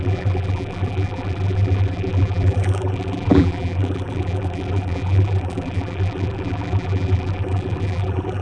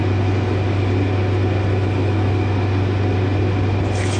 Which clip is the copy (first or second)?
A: first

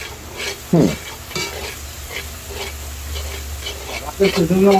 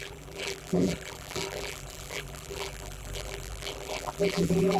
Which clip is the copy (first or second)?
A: second